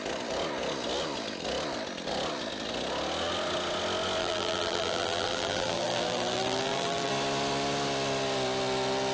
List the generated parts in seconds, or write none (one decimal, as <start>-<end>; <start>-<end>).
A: 4.2-7.1